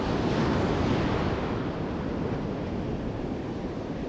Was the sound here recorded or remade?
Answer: recorded